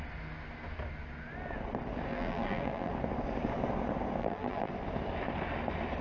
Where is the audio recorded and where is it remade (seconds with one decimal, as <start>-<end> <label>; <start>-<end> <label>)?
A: 0.0-2.1 recorded; 2.1-2.9 remade; 2.9-4.2 recorded; 4.2-4.7 remade; 4.7-6.0 recorded